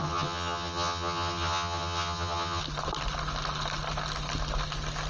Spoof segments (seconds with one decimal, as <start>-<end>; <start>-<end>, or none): 0.0-2.6